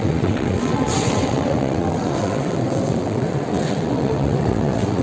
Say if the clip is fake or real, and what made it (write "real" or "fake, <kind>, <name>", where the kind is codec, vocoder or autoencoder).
fake, vocoder, WaveNeXt